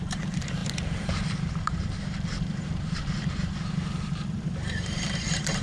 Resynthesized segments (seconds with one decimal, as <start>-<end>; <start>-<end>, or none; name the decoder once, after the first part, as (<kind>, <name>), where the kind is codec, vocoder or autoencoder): 0.0-5.6 (vocoder, BigVGAN v2)